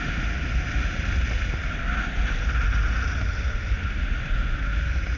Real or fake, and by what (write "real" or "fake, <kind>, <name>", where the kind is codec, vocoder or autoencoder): real